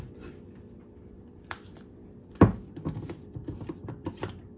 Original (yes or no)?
yes